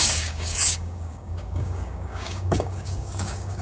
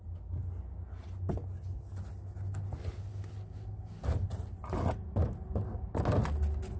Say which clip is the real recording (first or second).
second